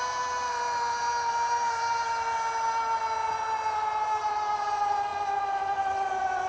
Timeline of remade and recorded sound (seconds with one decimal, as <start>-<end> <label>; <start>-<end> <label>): 0.0-6.5 recorded